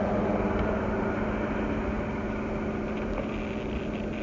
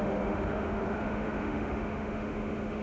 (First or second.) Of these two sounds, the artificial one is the second